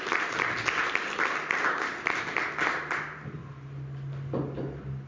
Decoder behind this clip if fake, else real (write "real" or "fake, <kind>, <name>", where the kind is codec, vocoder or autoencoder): real